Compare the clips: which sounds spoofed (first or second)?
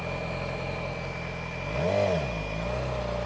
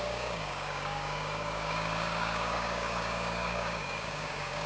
second